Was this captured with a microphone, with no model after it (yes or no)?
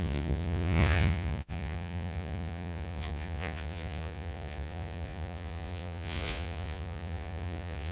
no